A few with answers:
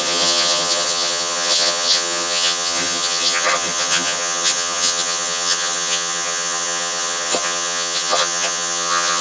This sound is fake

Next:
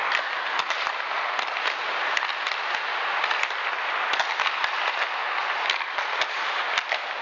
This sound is real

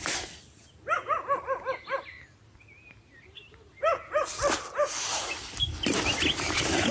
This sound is real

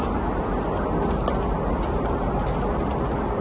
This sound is real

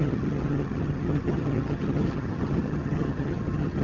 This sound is fake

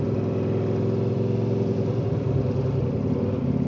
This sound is real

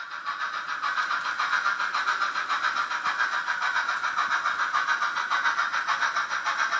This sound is real